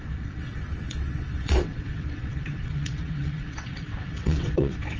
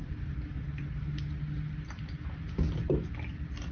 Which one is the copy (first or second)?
first